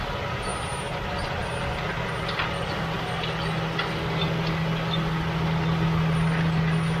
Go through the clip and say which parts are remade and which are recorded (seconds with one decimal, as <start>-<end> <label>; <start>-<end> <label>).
0.0-7.0 recorded